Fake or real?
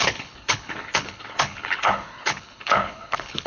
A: fake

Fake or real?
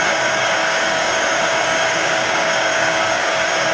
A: fake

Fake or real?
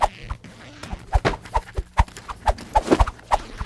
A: real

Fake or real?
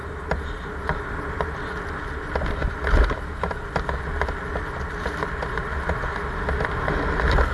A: real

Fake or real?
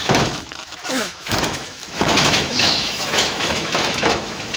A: fake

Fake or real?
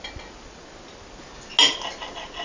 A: real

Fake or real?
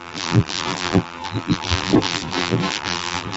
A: fake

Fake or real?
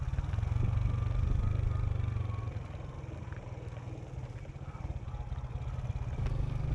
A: real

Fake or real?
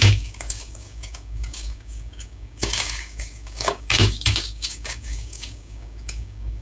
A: fake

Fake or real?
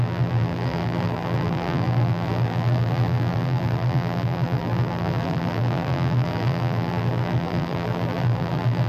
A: fake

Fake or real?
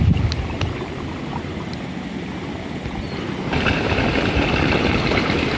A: real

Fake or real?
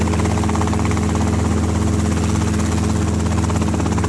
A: real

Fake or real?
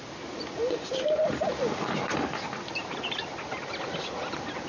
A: real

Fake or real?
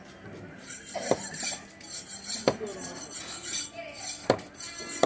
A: real